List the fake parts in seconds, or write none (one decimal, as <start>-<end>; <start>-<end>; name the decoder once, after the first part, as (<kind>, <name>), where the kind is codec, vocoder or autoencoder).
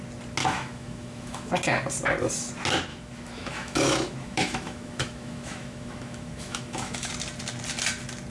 0.4-1.5 (autoencoder, DAC-VAE); 2.9-7.1